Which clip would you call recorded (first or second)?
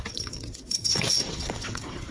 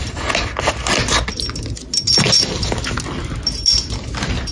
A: second